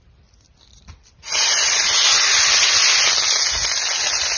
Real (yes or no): yes